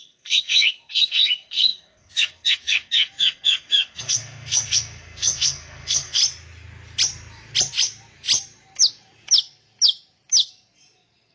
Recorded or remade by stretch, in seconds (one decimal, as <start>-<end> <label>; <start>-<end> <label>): 0.0-6.2 remade; 6.2-11.3 recorded